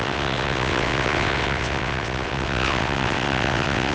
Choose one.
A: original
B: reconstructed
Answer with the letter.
B